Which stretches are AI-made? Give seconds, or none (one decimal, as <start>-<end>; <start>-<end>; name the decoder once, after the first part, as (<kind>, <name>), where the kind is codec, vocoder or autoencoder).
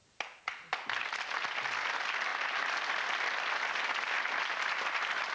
none